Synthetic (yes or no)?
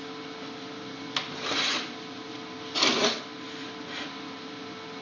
no